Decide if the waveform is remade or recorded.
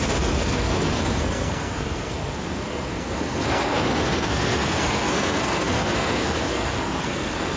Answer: remade